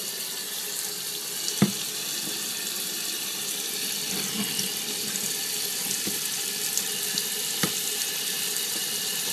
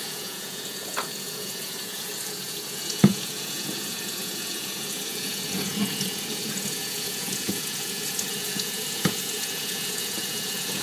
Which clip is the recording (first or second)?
first